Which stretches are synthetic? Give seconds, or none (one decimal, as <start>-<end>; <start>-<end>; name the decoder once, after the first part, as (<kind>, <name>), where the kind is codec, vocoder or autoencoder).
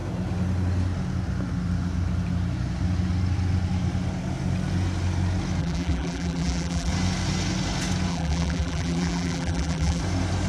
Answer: 5.6-6.9 (vocoder, BigVGAN v2); 8.1-10.0